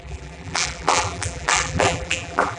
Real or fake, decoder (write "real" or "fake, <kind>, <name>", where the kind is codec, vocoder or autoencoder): fake, vocoder, BigVGAN v2